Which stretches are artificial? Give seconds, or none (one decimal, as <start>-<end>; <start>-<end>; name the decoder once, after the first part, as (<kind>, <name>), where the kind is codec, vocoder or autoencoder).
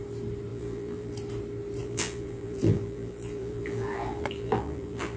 0.5-1.1 (vocoder, BigVGAN v2); 1.8-5.2